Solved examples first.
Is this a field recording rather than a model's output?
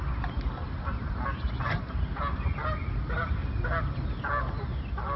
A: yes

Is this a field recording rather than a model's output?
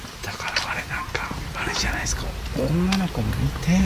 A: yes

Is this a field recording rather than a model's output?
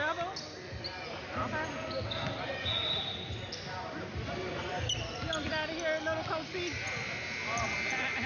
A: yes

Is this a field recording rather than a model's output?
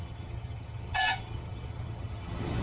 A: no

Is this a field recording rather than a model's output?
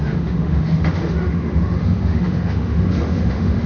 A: no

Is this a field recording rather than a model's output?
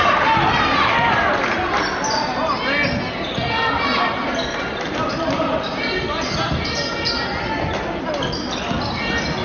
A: yes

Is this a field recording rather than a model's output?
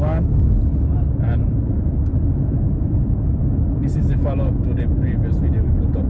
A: yes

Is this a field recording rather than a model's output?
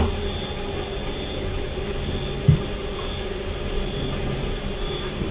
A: yes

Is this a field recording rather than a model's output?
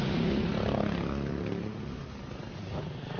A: yes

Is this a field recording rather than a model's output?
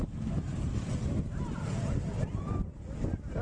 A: yes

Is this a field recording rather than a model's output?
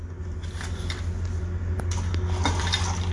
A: yes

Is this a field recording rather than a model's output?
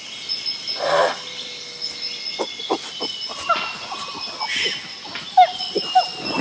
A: yes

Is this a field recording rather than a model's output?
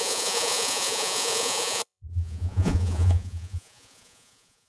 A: no